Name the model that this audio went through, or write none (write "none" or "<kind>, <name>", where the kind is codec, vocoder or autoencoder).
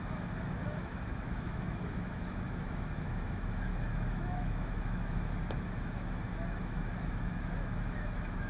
autoencoder, DAC-VAE